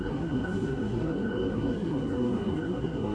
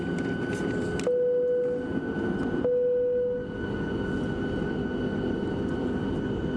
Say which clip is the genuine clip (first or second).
second